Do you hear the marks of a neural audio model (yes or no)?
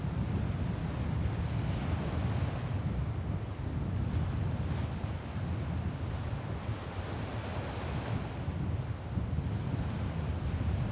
no